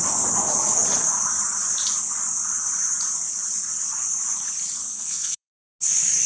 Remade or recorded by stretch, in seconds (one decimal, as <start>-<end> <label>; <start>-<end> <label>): 0.0-4.9 recorded; 4.9-5.5 remade; 5.5-6.3 recorded